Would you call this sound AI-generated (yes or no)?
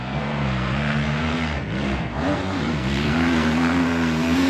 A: yes